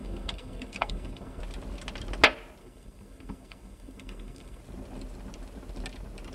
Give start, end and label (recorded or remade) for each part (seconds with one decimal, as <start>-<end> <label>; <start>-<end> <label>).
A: 0.0-1.4 remade; 1.4-2.6 recorded; 2.6-4.6 remade; 4.6-6.3 recorded